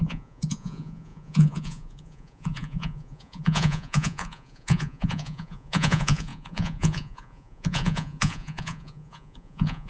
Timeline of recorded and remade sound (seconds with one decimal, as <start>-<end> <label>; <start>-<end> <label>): 0.0-9.9 remade